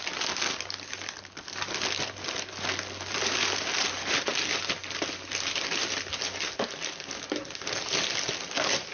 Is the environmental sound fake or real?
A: real